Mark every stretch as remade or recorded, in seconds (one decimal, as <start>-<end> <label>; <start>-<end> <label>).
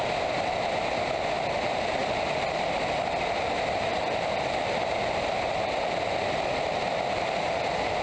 0.0-8.0 recorded